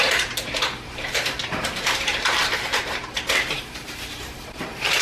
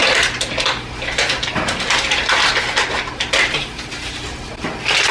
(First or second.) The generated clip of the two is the first